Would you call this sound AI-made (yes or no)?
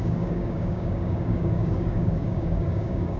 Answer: yes